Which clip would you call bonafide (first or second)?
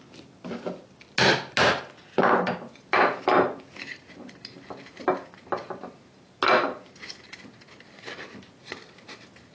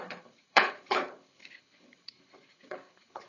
first